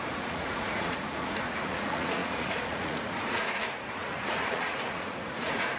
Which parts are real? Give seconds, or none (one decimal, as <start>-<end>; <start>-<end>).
none